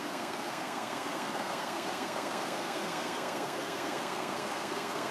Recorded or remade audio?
remade